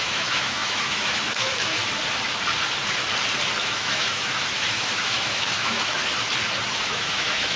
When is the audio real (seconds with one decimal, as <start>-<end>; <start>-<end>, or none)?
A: 1.8-3.6; 6.0-6.7